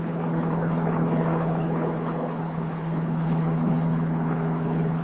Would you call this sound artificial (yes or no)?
yes